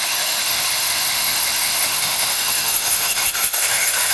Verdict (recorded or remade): remade